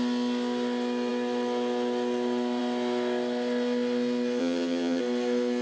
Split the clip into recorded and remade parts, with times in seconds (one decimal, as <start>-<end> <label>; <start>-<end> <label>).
0.0-4.4 recorded; 4.4-5.0 remade; 5.0-5.6 recorded